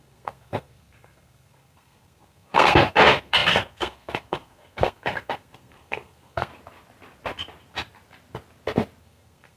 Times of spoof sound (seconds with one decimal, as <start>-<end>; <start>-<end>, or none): 0.0-6.5; 9.0-9.6